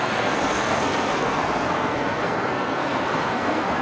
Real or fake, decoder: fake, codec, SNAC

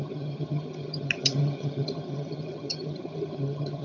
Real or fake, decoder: fake, vocoder, HiFi-GAN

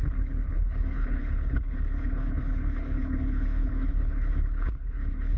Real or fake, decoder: fake, codec, HILCodec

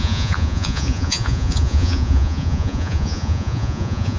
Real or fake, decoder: fake, vocoder, Vocos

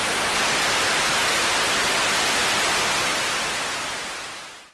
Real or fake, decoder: real